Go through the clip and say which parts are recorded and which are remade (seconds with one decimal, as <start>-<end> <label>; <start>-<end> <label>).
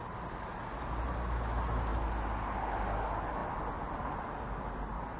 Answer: 0.0-5.2 recorded